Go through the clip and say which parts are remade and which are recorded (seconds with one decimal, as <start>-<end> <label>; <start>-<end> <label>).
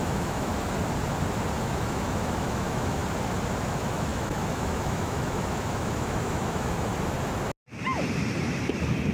0.0-0.5 remade; 0.5-1.6 recorded; 1.6-3.0 remade; 3.0-3.6 recorded; 3.6-6.9 remade; 6.9-9.1 recorded